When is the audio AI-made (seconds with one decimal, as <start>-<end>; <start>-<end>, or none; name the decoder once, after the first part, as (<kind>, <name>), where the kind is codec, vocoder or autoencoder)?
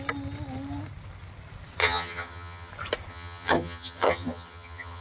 1.8-2.7 (vocoder, HiFi-GAN); 3.1-5.0